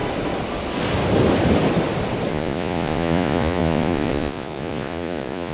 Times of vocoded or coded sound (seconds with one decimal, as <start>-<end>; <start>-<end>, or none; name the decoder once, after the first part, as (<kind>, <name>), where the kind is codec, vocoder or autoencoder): 2.3-5.5 (vocoder, Vocos)